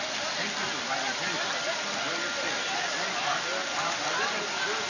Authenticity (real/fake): real